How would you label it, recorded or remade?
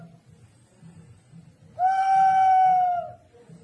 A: recorded